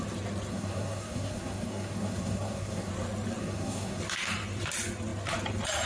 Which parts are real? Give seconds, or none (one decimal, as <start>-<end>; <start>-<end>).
0.0-0.5; 2.9-3.4; 4.0-5.9